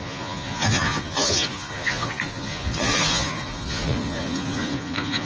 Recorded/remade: remade